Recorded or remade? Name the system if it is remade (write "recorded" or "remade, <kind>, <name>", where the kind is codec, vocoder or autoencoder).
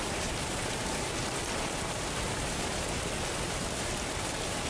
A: recorded